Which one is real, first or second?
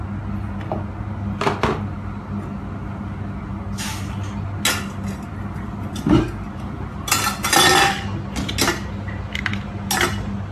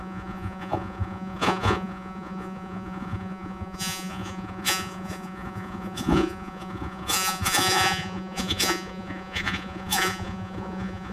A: first